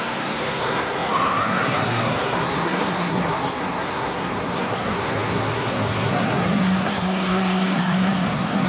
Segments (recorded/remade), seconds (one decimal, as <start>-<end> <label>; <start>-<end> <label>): 0.0-8.7 remade

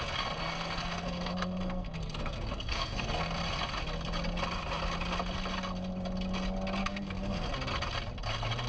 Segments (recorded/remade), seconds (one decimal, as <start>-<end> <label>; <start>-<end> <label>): 0.0-0.4 recorded; 0.4-3.1 remade; 3.1-6.8 recorded; 6.8-7.5 remade; 7.5-8.7 recorded